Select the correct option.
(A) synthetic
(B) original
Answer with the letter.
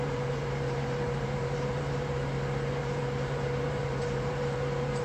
A